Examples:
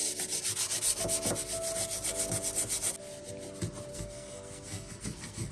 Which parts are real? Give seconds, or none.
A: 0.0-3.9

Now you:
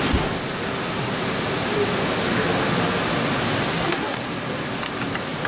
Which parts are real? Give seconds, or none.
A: 0.0-3.7; 4.2-5.5

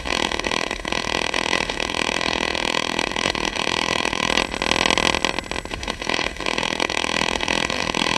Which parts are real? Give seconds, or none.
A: 4.3-5.7

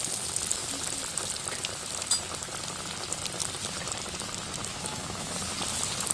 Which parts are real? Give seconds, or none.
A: 0.0-4.7; 5.3-6.1

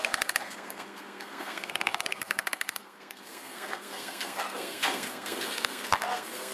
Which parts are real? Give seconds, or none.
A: none